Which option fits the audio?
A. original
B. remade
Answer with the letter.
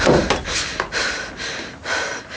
A